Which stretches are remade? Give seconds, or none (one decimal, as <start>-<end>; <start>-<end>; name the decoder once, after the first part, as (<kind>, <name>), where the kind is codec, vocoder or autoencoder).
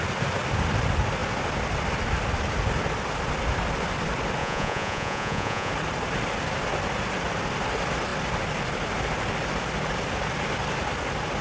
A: 4.4-5.7 (vocoder, Vocos)